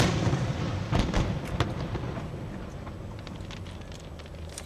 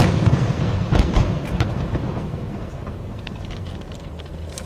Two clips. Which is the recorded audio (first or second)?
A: first